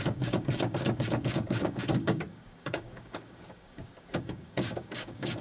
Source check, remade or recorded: remade